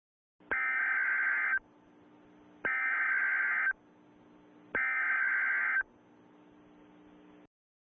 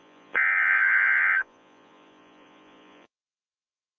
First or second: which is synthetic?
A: second